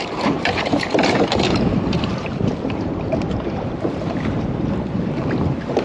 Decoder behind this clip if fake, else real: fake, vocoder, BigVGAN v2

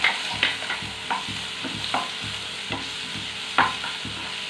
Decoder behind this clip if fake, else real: real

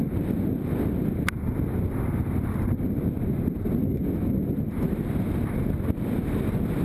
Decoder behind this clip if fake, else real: real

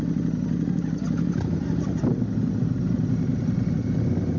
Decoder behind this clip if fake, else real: real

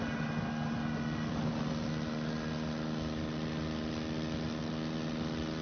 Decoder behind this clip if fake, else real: real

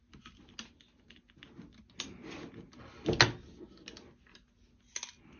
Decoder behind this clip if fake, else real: real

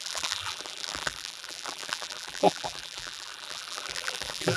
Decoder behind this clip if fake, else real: fake, vocoder, BigVGAN v2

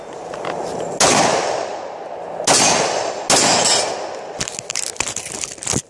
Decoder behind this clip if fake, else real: real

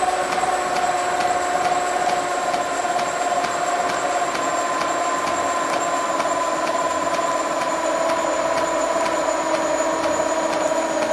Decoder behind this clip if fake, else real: fake, vocoder, BigVGAN v2